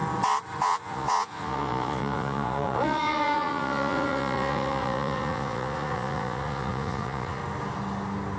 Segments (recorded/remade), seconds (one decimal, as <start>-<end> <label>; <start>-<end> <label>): 0.0-0.6 recorded; 0.6-7.4 remade; 7.4-8.4 recorded